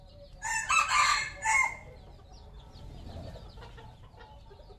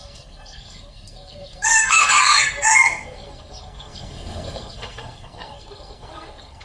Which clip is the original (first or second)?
first